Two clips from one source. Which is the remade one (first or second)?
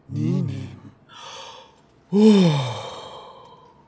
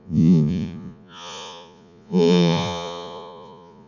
second